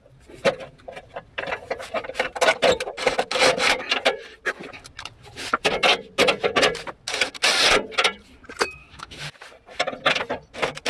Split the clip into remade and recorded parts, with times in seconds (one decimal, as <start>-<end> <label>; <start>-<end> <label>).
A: 0.0-8.8 recorded; 8.8-9.3 remade; 9.3-10.9 recorded